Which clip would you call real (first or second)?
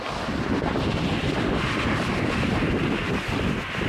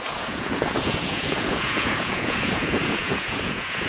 first